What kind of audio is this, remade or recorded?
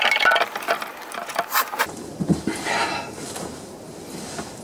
recorded